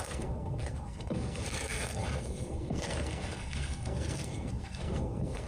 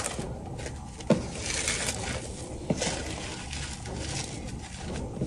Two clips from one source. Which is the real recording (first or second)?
second